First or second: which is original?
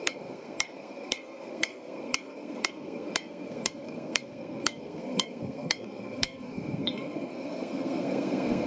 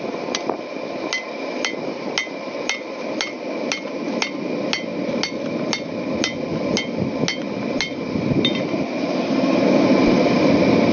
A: second